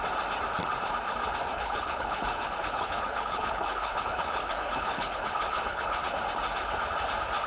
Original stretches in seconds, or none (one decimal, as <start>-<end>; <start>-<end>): 0.0-1.5; 6.0-7.5